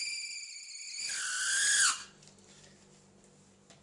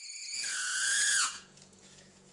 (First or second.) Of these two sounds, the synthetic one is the second